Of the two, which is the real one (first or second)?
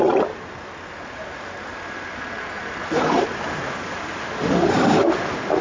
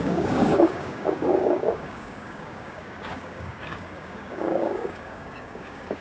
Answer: first